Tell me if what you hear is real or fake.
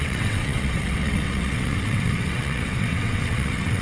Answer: fake